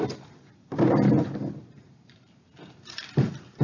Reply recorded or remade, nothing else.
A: recorded